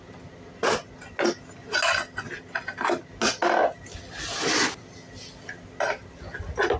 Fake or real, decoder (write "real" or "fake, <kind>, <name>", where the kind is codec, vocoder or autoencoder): real